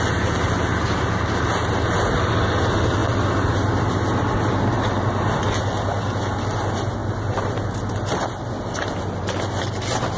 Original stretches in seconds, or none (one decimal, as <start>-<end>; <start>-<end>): 0.0-10.2